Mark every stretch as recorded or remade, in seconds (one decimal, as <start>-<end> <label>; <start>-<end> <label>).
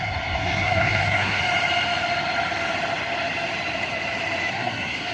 0.0-1.4 remade; 1.4-4.5 recorded; 4.5-5.1 remade